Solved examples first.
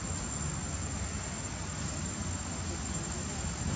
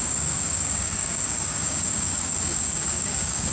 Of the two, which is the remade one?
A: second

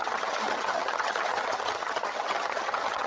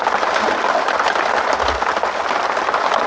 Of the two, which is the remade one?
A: first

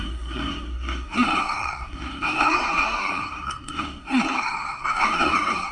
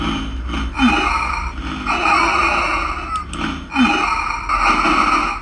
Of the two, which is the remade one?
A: first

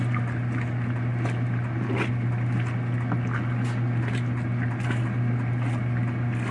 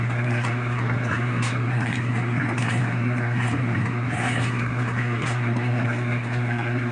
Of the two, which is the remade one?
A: second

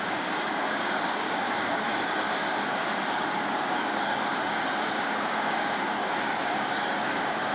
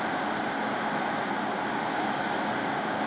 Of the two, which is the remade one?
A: first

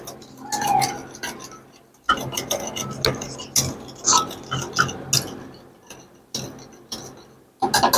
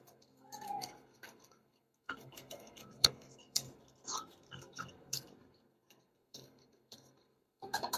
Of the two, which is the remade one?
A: second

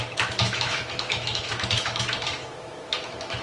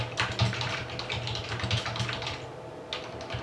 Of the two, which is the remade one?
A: first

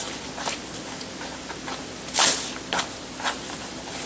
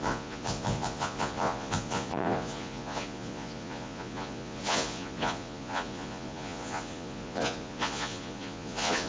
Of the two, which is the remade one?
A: second